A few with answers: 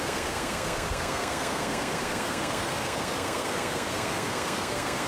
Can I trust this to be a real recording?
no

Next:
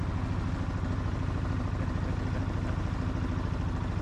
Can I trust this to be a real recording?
yes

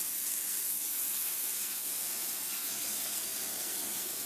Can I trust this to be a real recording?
no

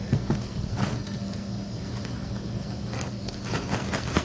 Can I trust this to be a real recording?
no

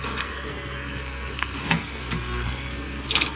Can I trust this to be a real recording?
no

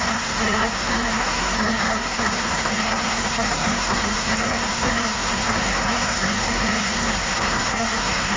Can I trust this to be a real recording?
no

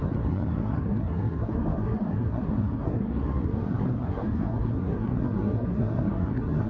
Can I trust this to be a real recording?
no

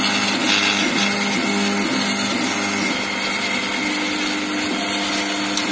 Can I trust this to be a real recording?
yes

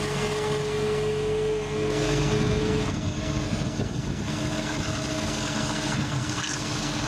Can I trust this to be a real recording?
no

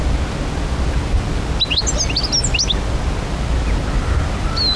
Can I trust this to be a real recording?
yes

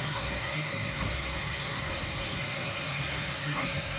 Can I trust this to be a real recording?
no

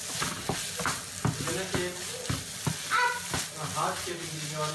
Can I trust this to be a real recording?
yes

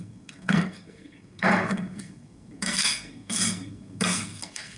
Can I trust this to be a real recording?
no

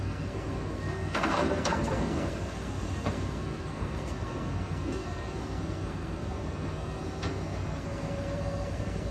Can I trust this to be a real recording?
no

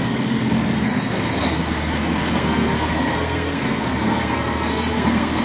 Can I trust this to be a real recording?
no